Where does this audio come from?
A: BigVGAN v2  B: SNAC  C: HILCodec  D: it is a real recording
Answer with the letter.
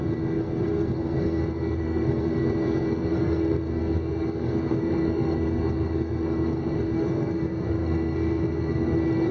B